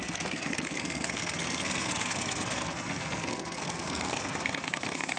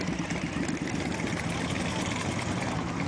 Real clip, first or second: second